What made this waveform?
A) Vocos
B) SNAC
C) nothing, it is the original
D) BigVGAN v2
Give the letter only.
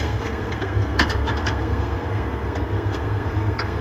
B